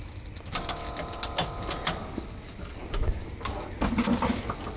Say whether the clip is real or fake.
real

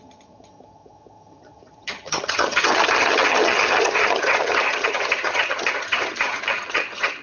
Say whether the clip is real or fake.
fake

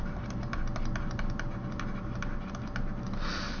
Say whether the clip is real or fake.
real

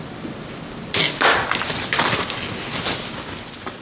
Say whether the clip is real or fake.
real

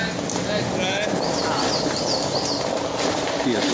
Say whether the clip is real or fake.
real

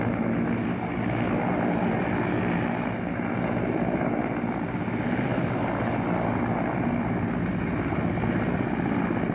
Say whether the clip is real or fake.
real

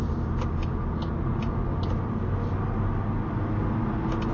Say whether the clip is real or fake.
real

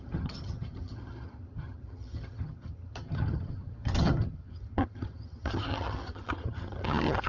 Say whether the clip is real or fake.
fake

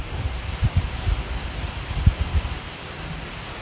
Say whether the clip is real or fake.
real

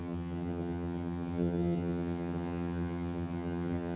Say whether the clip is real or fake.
fake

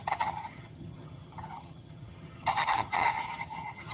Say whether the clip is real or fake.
fake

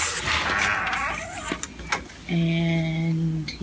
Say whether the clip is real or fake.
real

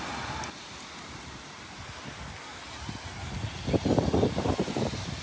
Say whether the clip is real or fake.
real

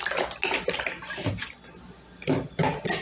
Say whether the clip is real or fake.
real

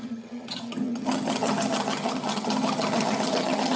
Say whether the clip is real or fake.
fake